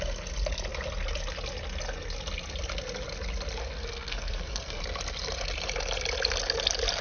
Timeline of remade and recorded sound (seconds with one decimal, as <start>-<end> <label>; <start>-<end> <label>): 0.0-3.6 recorded; 3.6-4.8 remade; 4.8-7.0 recorded